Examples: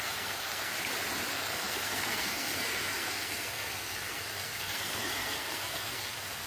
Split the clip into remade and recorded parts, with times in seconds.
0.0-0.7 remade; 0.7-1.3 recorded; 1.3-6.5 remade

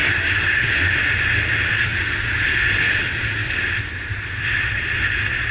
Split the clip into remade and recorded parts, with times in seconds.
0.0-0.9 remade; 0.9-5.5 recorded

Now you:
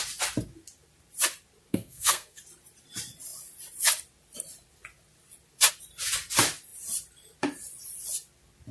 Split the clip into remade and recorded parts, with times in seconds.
0.0-1.7 recorded; 1.7-2.4 remade; 2.4-8.7 recorded

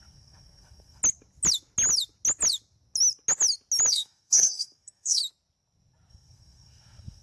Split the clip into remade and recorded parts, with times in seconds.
0.0-1.0 remade; 1.0-3.9 recorded; 3.9-5.2 remade; 5.2-6.1 recorded; 6.1-7.2 remade

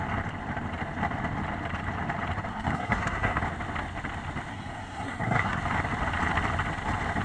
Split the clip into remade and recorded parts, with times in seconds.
0.0-2.5 recorded; 2.5-3.4 remade; 3.4-4.5 recorded; 4.5-5.6 remade; 5.6-7.2 recorded

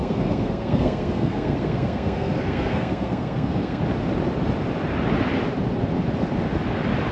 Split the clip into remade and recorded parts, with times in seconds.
0.0-3.8 remade; 3.8-7.1 recorded